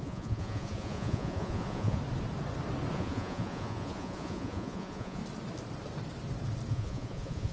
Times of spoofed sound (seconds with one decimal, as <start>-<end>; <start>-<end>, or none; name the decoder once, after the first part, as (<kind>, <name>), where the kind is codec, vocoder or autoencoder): 0.0-2.0 (vocoder, Vocos); 2.9-5.2; 6.7-7.5